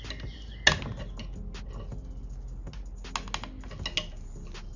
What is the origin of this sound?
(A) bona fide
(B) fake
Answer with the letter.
A